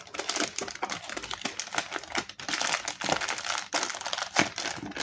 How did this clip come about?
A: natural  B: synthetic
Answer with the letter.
A